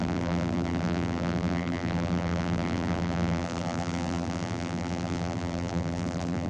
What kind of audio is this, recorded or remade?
remade